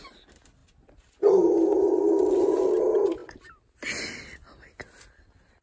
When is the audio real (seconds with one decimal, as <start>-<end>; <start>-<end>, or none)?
0.0-5.6